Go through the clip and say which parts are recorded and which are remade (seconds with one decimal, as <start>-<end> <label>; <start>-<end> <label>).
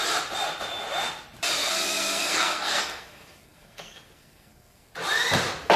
0.0-1.6 recorded; 1.6-4.9 remade; 4.9-5.8 recorded